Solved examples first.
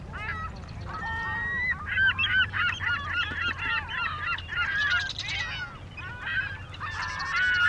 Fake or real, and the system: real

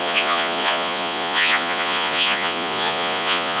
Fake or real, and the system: fake, vocoder, Vocos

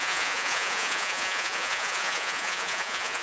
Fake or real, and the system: fake, vocoder, Vocos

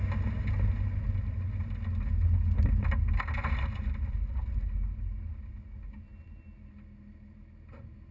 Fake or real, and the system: real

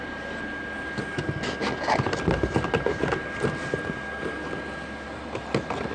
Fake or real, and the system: real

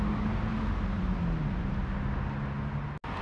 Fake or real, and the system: real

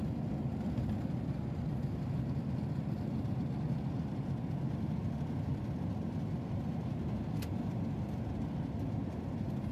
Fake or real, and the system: real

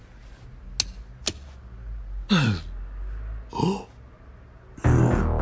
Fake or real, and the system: real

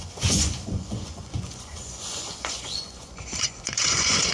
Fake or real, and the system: fake, vocoder, Vocos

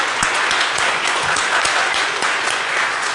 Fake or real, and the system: fake, vocoder, Vocos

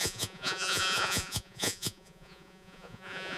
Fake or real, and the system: fake, vocoder, Vocos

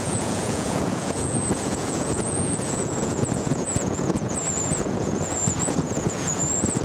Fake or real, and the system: fake, vocoder, Vocos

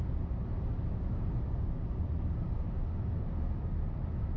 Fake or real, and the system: real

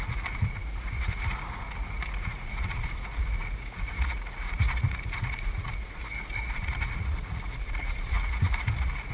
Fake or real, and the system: fake, vocoder, Vocos